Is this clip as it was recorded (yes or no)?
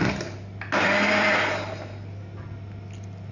yes